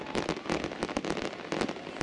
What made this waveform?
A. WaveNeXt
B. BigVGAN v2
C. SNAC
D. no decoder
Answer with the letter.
D